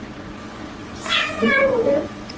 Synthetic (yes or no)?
yes